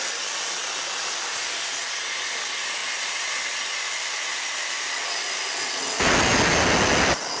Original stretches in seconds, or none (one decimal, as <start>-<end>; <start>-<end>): 0.0-7.4